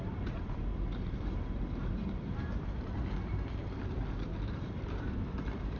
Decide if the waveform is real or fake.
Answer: fake